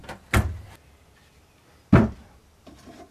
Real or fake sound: real